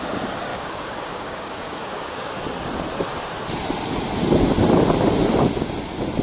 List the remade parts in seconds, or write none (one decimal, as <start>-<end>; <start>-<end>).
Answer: 0.5-2.3